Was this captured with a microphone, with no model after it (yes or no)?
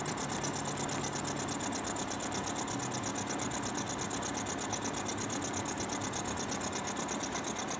yes